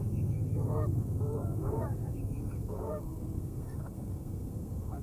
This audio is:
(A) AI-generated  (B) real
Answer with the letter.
A